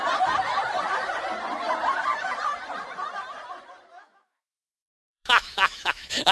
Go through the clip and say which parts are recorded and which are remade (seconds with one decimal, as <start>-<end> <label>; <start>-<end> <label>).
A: 0.0-3.9 recorded; 3.9-6.3 remade